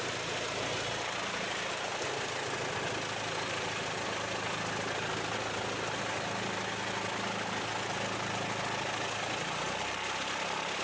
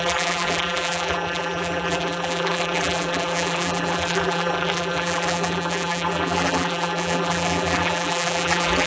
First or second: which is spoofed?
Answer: second